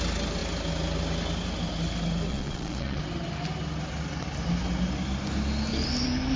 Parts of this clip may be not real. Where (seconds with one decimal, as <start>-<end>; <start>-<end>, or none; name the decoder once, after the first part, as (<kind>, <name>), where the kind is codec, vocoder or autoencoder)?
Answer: 2.3-3.0 (vocoder, Vocos)